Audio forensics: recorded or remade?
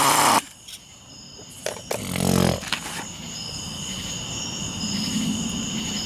recorded